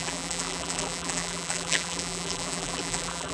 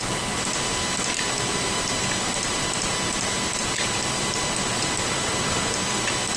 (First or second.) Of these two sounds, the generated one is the first